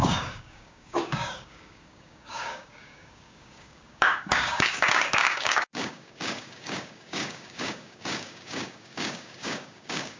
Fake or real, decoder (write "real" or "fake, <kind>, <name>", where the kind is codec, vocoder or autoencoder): fake, codec, DAC